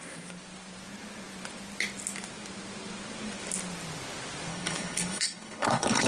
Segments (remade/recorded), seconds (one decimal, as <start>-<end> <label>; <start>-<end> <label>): 0.0-4.5 recorded; 4.5-6.1 remade